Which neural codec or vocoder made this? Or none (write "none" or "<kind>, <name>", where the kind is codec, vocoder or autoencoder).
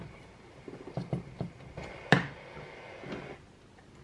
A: none